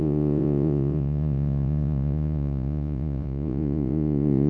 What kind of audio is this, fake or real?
fake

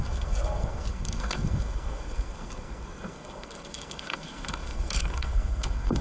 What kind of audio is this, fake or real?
fake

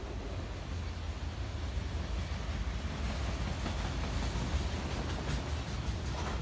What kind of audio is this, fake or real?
real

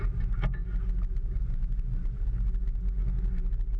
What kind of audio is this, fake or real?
real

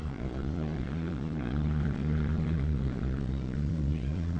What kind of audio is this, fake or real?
fake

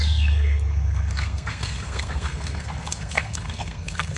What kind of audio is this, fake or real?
fake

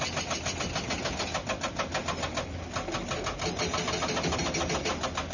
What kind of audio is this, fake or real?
real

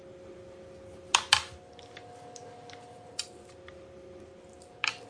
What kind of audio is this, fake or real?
real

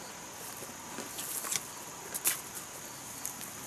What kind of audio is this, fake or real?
real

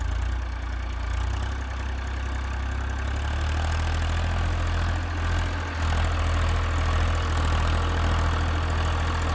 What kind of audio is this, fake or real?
real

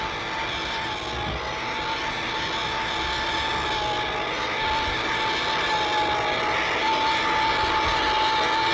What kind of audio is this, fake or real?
real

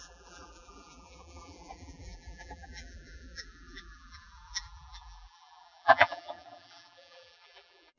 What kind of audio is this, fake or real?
fake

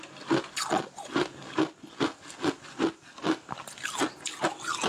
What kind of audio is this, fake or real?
real